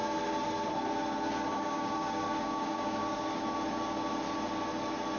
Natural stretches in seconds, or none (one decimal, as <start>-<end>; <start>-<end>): 0.0-1.5; 3.4-5.2